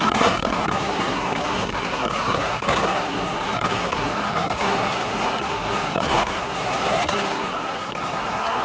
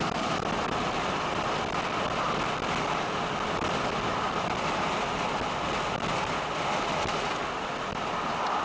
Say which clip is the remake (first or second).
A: first